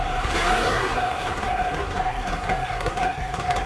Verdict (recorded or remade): remade